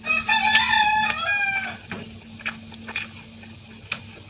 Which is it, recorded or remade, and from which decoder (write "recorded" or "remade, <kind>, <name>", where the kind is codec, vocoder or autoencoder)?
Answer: recorded